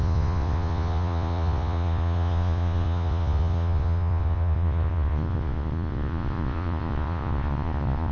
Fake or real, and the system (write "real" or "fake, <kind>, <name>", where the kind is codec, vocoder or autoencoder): fake, vocoder, Vocos